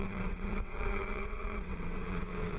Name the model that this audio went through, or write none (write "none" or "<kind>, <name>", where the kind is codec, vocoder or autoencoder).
vocoder, WaveNeXt